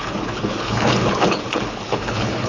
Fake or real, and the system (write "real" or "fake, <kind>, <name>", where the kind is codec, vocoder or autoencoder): fake, codec, HILCodec